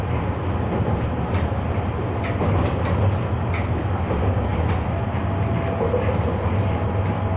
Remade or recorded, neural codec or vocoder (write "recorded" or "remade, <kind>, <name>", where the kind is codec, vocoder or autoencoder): recorded